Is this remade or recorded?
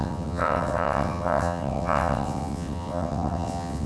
remade